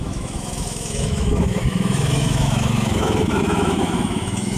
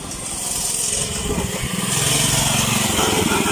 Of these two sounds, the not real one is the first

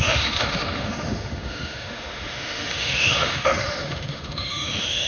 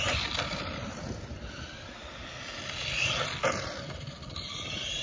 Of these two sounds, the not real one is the first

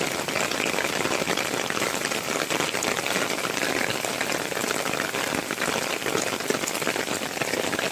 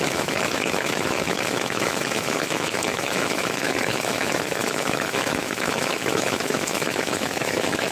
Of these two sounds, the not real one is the second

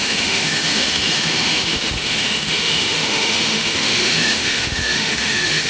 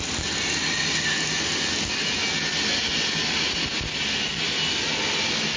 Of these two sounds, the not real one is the first